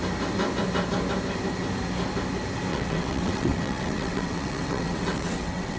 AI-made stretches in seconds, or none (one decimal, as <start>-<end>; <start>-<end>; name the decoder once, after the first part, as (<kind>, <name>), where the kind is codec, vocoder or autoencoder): 2.7-5.8 (vocoder, WaveNeXt)